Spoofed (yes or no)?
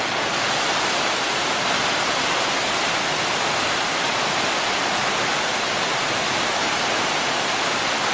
no